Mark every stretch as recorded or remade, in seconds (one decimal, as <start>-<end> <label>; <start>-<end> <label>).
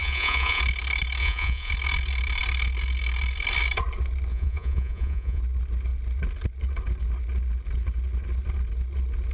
0.0-0.6 remade; 0.6-1.2 recorded; 1.2-1.7 remade; 1.7-4.3 recorded; 4.3-5.4 remade; 5.4-9.3 recorded